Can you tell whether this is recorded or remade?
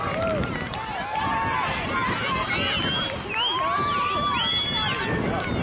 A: recorded